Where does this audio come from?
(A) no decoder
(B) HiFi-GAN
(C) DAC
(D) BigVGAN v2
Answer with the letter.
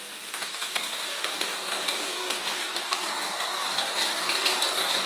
C